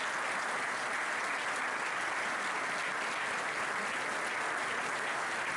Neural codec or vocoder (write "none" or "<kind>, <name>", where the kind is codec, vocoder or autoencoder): none